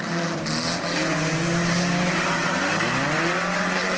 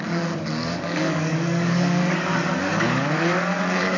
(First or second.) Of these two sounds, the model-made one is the second